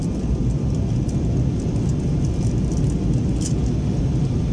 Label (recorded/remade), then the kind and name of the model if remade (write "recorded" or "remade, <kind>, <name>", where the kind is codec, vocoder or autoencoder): recorded